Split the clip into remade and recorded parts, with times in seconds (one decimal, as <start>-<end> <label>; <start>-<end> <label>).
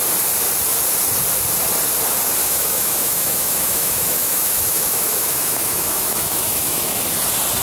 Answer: 0.0-2.4 recorded; 2.4-7.0 remade; 7.0-7.6 recorded